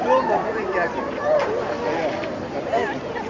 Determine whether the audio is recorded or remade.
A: recorded